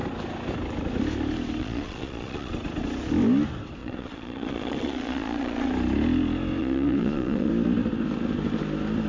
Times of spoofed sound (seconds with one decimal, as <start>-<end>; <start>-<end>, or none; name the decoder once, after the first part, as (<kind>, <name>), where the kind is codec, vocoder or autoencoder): 1.6-2.5 (vocoder, Vocos); 3.8-5.7; 6.6-7.5